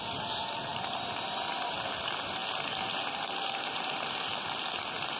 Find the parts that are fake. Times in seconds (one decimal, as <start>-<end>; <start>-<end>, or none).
none